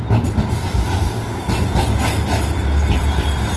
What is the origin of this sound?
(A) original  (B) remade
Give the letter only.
A